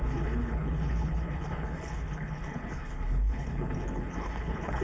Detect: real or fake fake